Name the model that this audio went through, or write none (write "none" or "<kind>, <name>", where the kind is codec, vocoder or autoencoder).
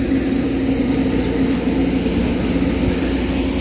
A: none